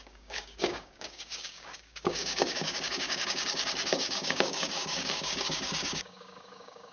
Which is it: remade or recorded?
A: remade